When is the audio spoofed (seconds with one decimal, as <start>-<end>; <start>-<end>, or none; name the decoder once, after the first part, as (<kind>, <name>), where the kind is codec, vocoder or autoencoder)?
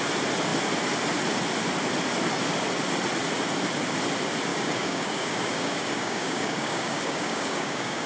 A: 4.5-8.1 (codec, DAC)